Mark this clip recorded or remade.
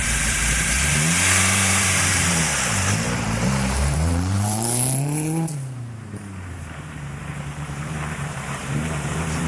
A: remade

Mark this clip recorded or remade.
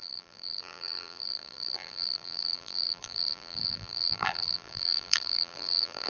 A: remade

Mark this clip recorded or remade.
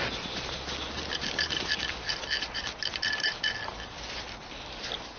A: recorded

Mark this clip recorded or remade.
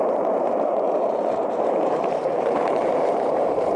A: remade